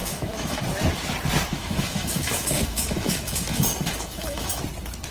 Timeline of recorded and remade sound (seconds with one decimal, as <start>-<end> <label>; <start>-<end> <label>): 0.0-0.6 remade; 0.6-1.5 recorded; 1.5-4.6 remade; 4.6-5.1 recorded